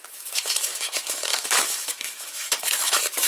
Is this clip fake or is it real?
fake